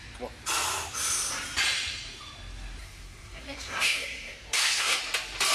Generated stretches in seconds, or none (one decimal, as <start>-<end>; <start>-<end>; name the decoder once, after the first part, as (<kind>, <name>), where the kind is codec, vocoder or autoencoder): 2.8-5.0 (codec, SNAC)